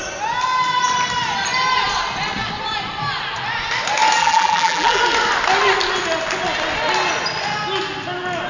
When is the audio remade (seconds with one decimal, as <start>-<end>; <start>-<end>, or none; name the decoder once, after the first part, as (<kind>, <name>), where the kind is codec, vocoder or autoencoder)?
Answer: 4.2-5.0 (vocoder, BigVGAN v2)